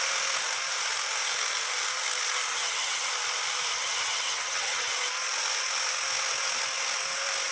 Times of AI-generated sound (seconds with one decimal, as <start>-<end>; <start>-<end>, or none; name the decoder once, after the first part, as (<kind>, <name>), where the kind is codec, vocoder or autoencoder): 2.5-3.1 (vocoder, HiFi-GAN); 3.7-4.9